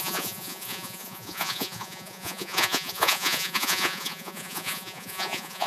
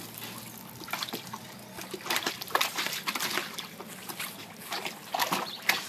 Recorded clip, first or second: second